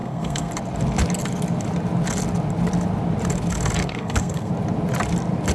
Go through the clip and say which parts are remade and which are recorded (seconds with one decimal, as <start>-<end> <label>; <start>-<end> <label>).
0.0-0.5 remade; 0.5-3.8 recorded; 3.8-4.5 remade; 4.5-5.5 recorded